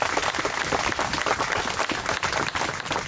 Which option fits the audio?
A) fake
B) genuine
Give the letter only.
B